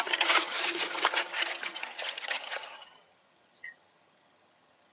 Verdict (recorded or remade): remade